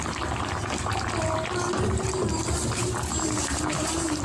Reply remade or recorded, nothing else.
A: recorded